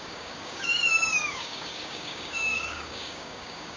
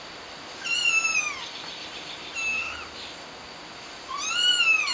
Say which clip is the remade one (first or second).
first